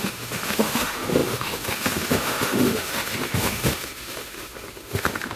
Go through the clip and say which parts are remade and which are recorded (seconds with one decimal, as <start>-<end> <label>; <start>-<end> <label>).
0.0-5.4 remade